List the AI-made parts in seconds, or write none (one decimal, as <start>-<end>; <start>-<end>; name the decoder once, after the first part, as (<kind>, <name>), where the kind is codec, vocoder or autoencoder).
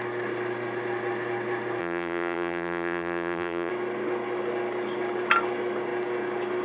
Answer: 1.8-3.7 (vocoder, BigVGAN v2)